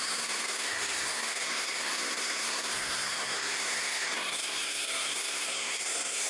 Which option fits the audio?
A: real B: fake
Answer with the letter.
B